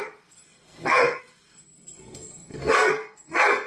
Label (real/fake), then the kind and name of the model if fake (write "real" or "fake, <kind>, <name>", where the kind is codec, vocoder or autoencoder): fake, codec, SNAC